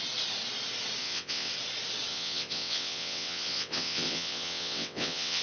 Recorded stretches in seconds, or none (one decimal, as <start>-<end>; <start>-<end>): 0.0-1.0; 1.5-2.1